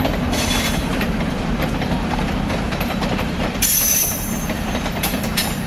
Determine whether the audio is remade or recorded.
remade